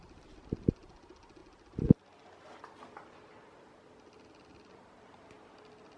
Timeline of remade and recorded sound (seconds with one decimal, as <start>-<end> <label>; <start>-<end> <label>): 0.0-6.0 recorded